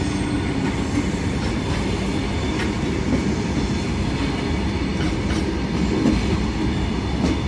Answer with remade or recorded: recorded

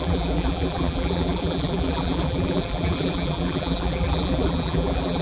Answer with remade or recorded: remade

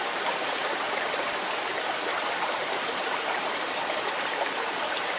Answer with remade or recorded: remade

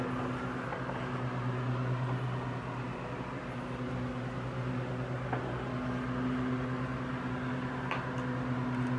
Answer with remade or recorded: recorded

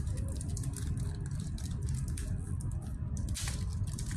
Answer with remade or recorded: remade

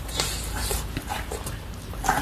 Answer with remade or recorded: remade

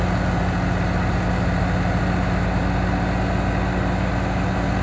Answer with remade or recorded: recorded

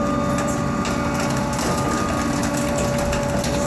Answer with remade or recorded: recorded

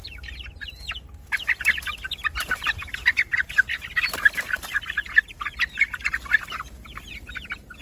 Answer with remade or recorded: remade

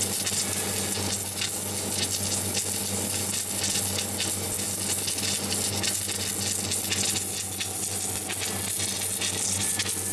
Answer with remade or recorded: recorded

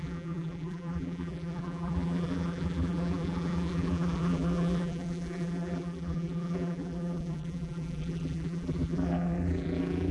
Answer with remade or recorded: remade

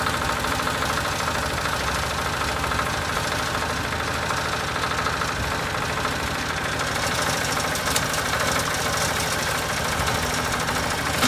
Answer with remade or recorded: recorded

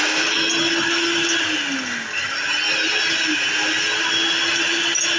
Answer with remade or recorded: recorded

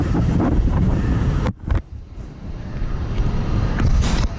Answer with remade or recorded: remade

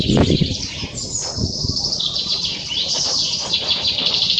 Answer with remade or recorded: remade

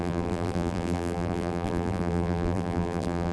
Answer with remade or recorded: remade